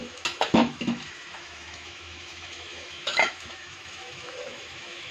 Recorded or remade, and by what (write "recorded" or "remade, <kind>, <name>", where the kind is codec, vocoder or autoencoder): remade, autoencoder, DAC-VAE